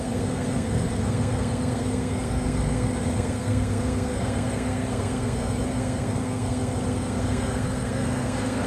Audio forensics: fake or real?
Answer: fake